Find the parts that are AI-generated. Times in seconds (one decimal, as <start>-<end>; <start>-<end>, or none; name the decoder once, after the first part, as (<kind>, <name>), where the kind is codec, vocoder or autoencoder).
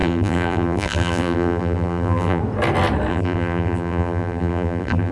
0.0-2.4 (vocoder, BigVGAN v2); 3.1-5.1